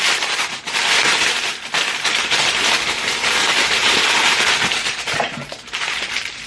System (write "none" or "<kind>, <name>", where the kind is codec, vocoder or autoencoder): vocoder, BigVGAN v2